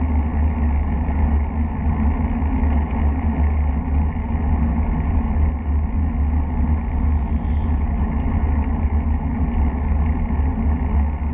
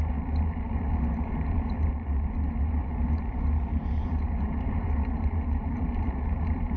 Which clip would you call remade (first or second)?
second